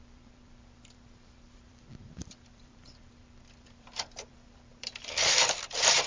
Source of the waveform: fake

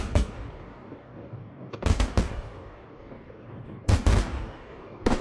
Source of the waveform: fake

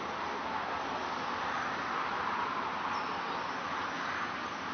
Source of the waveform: real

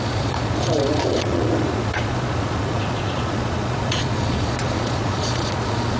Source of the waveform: fake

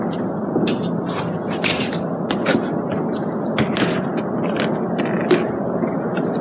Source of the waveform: real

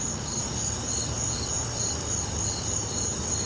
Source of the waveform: real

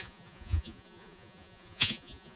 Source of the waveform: fake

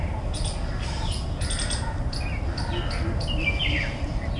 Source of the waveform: real